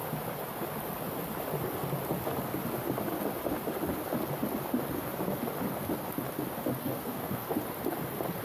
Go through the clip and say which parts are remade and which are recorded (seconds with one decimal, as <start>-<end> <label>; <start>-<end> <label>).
0.0-6.8 recorded; 6.8-7.5 remade; 7.5-8.4 recorded